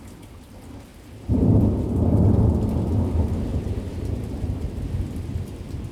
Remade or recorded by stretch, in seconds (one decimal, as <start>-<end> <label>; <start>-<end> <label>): 0.0-0.9 recorded; 0.9-1.6 remade; 1.6-3.5 recorded; 3.5-5.9 remade